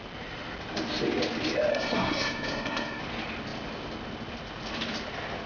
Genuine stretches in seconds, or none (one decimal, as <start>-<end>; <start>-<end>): 0.0-1.7; 3.0-5.5